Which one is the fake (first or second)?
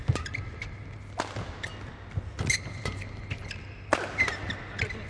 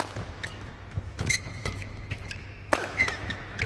second